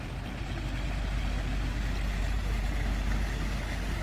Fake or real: real